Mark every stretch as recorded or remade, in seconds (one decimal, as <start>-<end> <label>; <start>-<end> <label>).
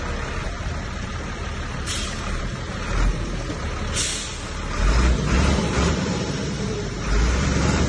0.0-0.4 recorded; 0.4-3.5 remade; 3.5-4.1 recorded; 4.1-7.9 remade